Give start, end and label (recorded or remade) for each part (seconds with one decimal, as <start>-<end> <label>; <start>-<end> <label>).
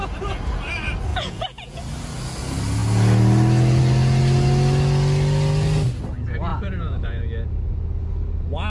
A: 0.0-1.1 recorded; 1.1-1.8 remade; 1.8-6.5 recorded; 6.5-7.2 remade; 7.2-8.7 recorded